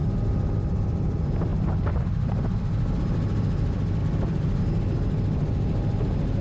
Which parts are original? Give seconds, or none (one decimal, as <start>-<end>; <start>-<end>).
0.0-1.5; 3.0-4.0; 4.6-6.4